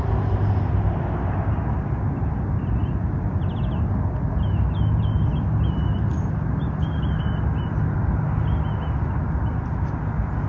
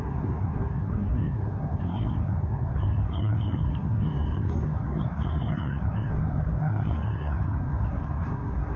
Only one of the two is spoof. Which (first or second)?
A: second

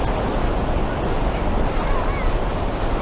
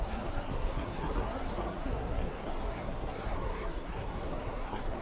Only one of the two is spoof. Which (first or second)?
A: second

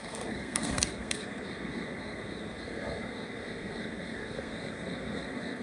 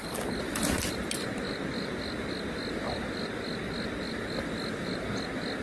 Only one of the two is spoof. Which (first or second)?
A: first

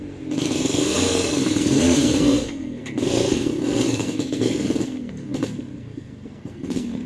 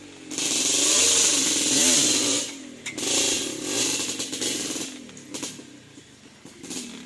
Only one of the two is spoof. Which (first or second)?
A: first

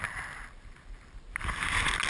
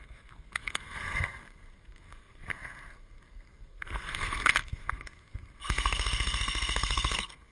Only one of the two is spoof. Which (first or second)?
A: second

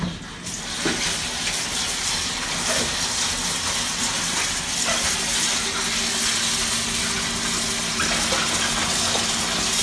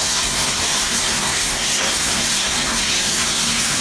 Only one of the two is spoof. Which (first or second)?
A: second